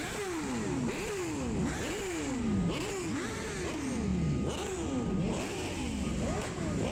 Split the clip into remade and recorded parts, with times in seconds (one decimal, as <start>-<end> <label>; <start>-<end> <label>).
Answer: 0.0-6.9 recorded